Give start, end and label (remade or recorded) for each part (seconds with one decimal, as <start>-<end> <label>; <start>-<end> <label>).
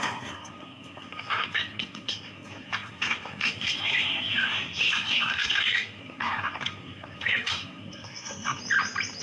0.0-8.6 remade; 8.6-9.2 recorded